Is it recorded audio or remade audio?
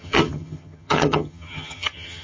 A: remade